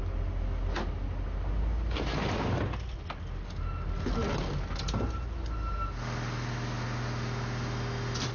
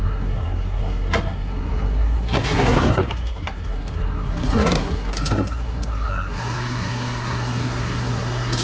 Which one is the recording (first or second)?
first